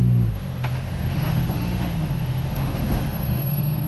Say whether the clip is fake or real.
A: fake